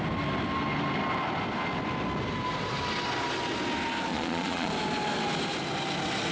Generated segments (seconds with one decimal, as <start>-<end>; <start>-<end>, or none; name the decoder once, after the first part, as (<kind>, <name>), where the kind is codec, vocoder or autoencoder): 4.1-4.7 (vocoder, Vocos)